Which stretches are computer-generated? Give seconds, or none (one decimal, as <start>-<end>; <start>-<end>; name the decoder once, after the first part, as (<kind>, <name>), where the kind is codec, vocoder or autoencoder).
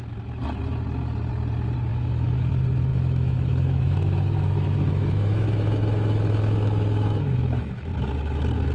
1.9-2.5 (autoencoder, DAC-VAE); 2.9-7.9